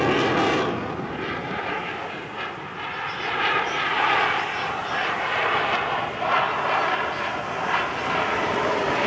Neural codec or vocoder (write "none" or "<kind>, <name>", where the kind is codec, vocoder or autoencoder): none